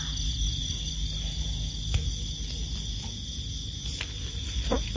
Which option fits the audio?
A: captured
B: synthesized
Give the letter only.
A